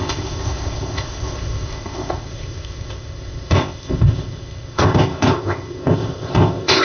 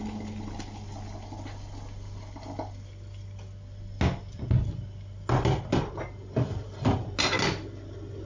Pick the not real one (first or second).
first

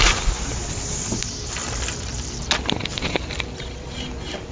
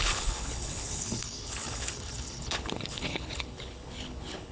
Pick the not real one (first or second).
second